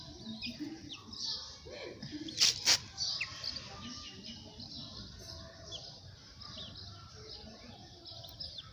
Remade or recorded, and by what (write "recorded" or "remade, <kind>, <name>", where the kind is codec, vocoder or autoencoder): recorded